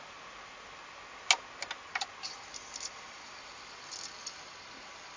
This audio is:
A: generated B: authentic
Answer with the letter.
B